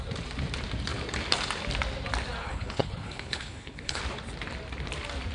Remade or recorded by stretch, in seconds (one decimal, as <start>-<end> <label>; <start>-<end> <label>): 0.0-2.4 recorded; 2.4-4.0 remade; 4.0-5.3 recorded